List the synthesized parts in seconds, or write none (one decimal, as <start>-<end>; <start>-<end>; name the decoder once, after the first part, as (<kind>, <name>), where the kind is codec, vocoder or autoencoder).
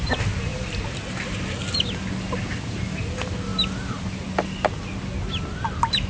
none